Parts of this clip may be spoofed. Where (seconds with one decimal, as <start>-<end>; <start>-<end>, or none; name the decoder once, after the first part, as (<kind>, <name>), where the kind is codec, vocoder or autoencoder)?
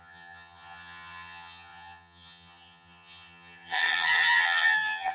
0.0-5.1 (vocoder, HiFi-GAN)